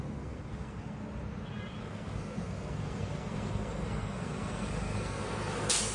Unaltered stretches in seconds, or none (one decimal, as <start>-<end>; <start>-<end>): 1.0-1.8